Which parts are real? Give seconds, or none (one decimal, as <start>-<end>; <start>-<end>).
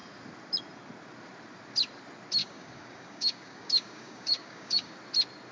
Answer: 0.0-2.4; 4.9-5.5